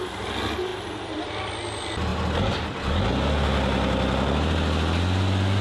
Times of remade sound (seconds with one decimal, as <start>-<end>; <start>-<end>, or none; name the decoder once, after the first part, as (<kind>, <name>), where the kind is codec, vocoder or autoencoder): 0.7-1.3 (vocoder, BigVGAN v2)